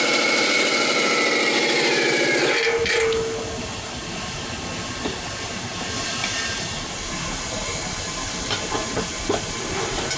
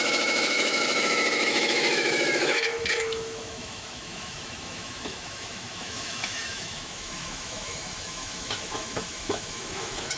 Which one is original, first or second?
first